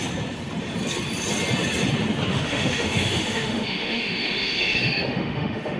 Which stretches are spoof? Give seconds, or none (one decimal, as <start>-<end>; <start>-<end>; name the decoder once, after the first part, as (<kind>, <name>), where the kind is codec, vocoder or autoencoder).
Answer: 2.3-5.8 (autoencoder, DAC-VAE)